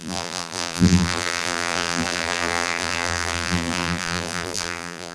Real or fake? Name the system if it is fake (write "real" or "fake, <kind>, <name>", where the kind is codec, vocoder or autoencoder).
fake, vocoder, BigVGAN v2